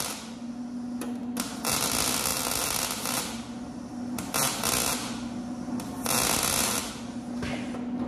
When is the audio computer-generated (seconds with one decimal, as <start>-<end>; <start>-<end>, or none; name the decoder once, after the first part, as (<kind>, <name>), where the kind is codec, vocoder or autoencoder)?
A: none